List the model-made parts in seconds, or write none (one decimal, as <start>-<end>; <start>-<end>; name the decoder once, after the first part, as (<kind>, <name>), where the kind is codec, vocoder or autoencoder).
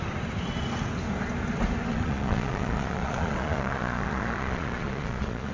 1.9-5.5 (vocoder, Vocos)